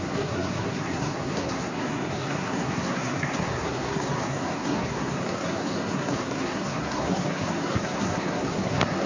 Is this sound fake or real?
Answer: fake